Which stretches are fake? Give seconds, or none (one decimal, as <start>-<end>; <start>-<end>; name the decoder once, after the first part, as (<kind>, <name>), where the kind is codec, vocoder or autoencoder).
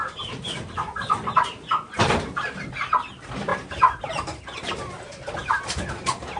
0.0-2.7 (vocoder, BigVGAN v2); 3.5-4.4